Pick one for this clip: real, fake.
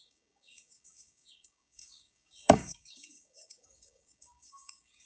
fake